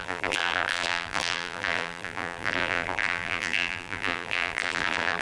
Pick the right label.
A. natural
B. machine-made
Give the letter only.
B